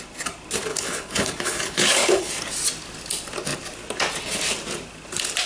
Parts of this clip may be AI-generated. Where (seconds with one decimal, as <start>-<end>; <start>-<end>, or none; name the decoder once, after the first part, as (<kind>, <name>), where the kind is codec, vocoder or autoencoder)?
0.7-2.3 (codec, HILCodec)